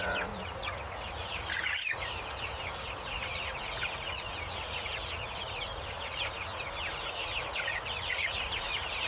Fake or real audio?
fake